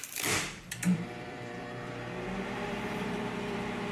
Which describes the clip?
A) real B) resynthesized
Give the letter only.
B